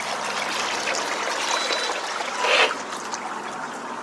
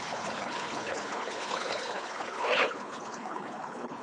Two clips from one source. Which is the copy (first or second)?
second